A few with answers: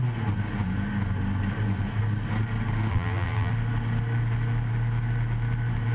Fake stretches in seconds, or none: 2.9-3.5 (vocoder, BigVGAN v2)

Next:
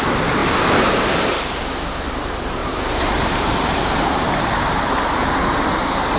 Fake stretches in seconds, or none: 2.6-4.5 (vocoder, BigVGAN v2)

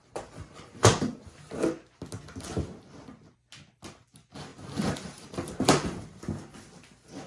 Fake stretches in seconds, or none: 0.0-1.5 (vocoder, BigVGAN v2); 4.5-6.2

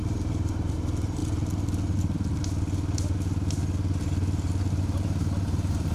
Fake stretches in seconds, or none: 0.0-1.2 (vocoder, BigVGAN v2); 4.7-5.9

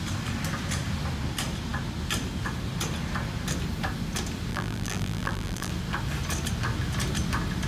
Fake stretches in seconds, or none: 4.5-5.7 (vocoder, BigVGAN v2)

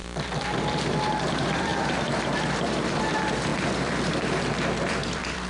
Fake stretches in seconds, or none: 0.0-5.5 (vocoder, BigVGAN v2)

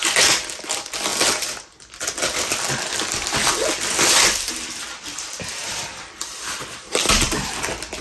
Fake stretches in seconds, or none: 0.0-1.1 (vocoder, BigVGAN v2); 2.4-3.4; 4.5-8.0